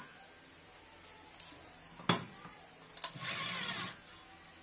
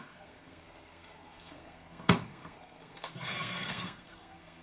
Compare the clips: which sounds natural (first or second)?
first